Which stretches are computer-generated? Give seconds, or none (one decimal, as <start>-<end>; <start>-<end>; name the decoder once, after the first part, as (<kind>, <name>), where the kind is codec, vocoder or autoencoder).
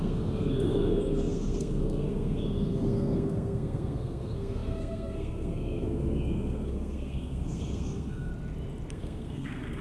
0.0-8.3 (codec, SNAC); 8.9-9.8